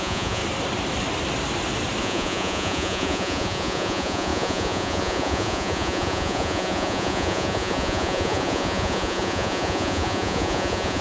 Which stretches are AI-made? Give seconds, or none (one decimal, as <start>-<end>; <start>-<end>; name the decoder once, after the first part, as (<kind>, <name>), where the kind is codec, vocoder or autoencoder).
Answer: 0.0-0.4 (vocoder, Vocos); 2.0-11.0